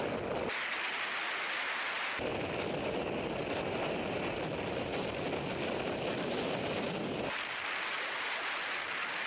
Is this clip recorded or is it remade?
recorded